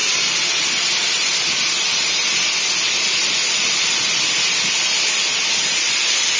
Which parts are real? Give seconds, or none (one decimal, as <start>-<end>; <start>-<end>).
0.0-6.4

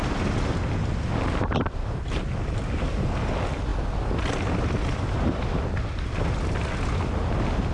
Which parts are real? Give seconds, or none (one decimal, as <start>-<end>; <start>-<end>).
0.0-7.7

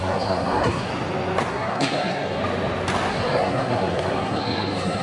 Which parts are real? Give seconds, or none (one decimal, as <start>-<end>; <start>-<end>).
0.9-1.5; 2.4-3.1

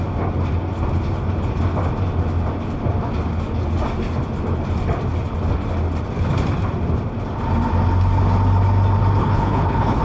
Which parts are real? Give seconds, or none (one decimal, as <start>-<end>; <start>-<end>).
0.0-9.2

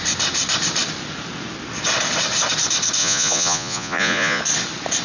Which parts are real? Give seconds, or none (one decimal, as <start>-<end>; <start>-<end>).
0.0-3.0; 4.4-5.0

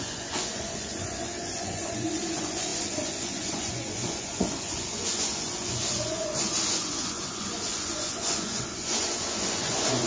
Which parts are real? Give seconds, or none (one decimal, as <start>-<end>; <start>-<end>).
none

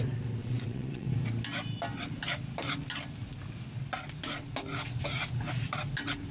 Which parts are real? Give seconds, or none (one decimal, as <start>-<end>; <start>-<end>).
0.0-0.4; 1.1-6.3